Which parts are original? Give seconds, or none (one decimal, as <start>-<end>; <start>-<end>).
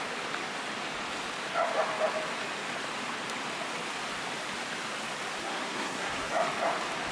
0.0-5.4; 6.3-7.1